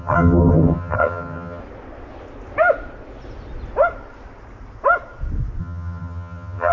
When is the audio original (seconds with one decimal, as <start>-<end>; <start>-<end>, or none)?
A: 1.6-5.6